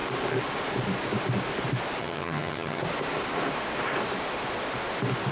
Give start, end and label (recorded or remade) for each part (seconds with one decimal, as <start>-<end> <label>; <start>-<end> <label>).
0.0-2.0 recorded; 2.0-2.8 remade; 2.8-5.3 recorded